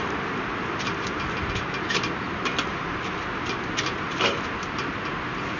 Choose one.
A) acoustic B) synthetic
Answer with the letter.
A